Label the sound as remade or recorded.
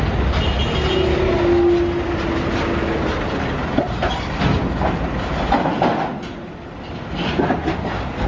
recorded